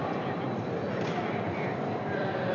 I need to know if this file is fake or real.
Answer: fake